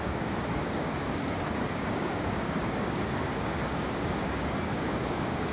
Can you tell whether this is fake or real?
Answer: fake